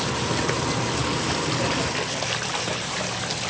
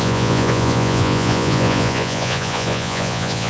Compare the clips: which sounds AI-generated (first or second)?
second